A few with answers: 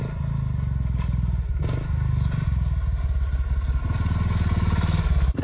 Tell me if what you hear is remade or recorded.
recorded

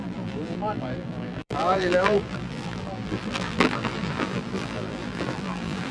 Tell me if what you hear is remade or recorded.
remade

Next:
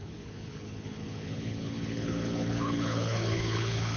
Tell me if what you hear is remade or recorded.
remade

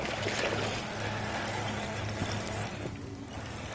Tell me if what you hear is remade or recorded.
recorded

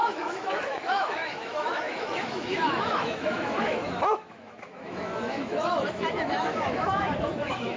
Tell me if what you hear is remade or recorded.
remade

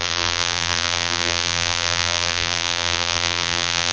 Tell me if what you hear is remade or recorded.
remade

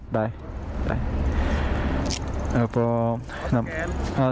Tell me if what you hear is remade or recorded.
remade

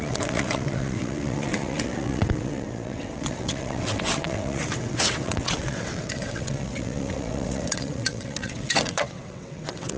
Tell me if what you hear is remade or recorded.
remade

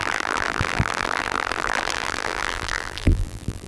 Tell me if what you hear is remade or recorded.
remade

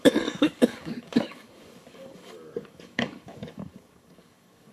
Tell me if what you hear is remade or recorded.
remade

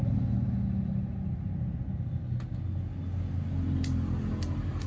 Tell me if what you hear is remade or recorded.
recorded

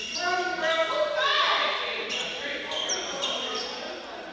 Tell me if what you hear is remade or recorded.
recorded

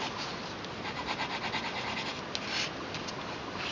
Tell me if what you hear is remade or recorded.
recorded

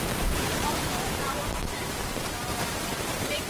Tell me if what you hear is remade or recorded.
remade